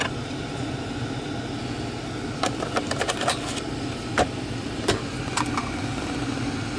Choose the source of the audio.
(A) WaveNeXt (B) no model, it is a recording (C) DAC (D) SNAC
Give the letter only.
B